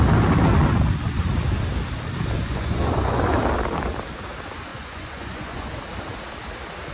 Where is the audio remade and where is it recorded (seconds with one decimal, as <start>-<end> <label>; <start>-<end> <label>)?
0.0-2.4 recorded; 2.4-3.2 remade; 3.2-4.7 recorded; 4.7-5.7 remade; 5.7-6.9 recorded